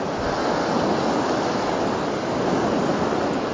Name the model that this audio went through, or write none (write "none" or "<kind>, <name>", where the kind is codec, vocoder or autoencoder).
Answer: none